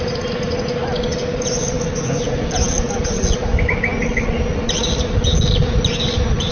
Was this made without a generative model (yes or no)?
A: yes